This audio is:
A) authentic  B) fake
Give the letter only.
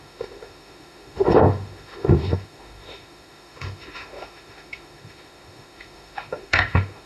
B